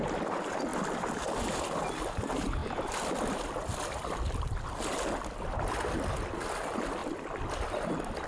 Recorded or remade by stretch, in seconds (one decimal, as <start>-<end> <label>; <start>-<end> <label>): 0.0-8.3 recorded